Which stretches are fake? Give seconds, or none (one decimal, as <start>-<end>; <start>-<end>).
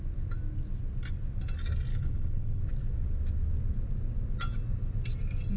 1.9-2.6